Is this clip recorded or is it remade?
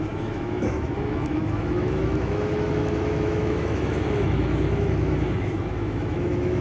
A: remade